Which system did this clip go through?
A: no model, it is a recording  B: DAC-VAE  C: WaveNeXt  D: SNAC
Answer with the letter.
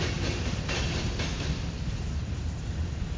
A